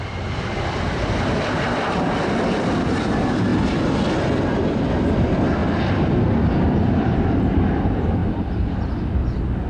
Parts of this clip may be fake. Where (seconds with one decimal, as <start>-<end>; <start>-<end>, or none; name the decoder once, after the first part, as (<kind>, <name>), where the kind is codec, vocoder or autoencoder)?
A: 0.0-3.5 (vocoder, BigVGAN v2); 4.5-5.6; 7.3-9.7